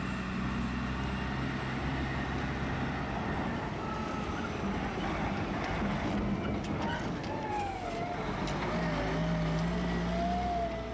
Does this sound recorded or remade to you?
recorded